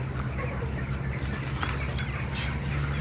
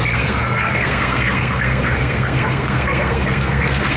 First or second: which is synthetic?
second